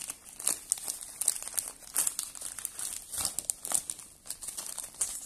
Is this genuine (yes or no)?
yes